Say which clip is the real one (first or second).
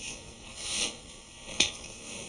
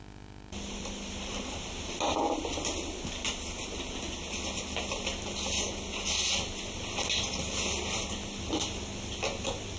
second